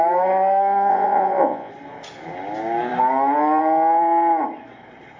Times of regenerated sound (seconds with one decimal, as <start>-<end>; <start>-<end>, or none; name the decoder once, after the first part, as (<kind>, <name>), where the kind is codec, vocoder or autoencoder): 0.9-1.7 (vocoder, Vocos)